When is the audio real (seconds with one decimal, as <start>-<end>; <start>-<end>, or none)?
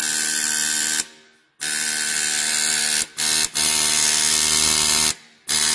0.0-5.7